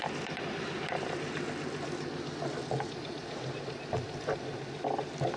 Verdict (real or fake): real